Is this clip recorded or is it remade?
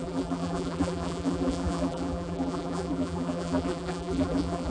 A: remade